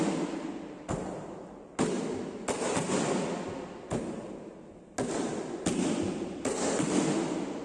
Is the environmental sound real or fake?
real